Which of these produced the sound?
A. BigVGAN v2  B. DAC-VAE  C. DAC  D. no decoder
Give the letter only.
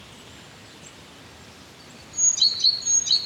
D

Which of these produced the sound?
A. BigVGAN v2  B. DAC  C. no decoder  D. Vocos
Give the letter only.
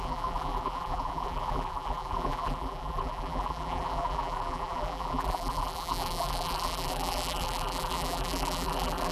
A